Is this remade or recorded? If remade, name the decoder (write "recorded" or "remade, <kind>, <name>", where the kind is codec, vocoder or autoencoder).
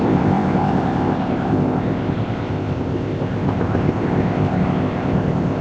remade, codec, ZipCodec